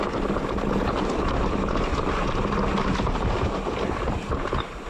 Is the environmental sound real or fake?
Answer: real